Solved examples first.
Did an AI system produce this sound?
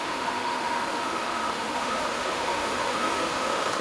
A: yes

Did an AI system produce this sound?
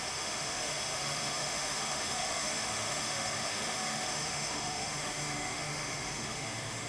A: yes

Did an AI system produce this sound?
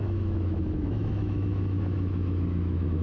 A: yes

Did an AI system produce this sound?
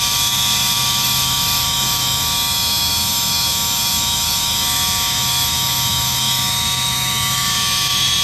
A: yes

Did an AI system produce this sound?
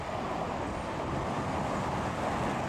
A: no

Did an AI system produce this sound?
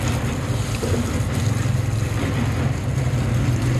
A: no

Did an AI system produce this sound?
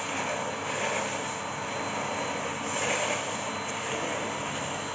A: no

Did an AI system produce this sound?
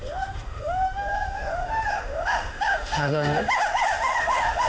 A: yes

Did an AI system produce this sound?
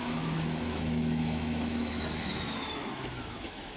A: yes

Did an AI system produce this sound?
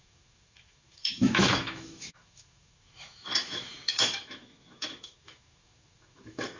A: yes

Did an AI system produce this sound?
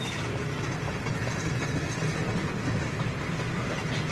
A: no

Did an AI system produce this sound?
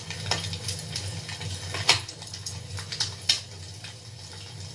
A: no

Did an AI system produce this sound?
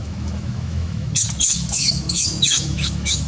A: yes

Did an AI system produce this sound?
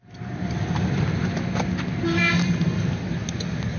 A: no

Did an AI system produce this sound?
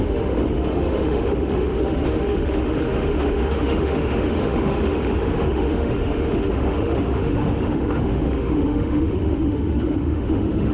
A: yes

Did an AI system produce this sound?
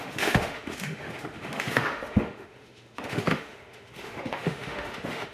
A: yes